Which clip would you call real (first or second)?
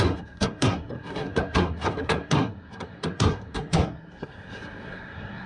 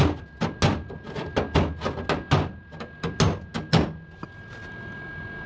second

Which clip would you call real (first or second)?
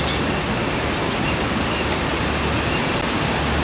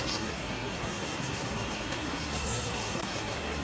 first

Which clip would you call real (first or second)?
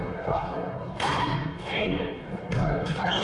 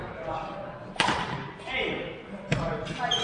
second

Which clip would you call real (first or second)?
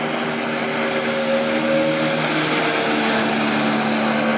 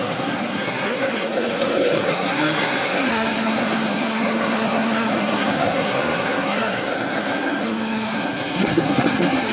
first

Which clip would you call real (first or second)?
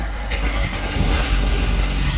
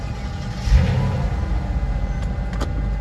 second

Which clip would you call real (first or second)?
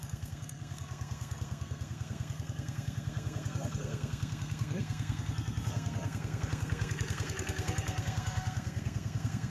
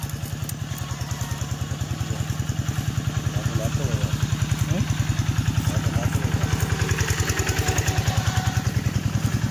second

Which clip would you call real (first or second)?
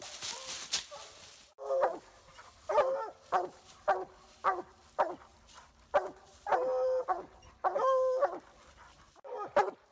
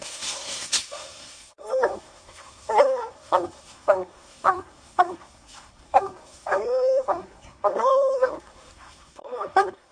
first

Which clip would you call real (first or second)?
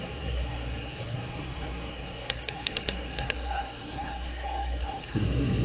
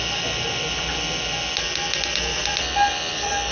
second